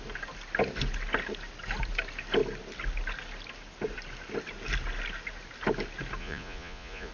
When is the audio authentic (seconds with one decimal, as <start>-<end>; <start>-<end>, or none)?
0.0-6.2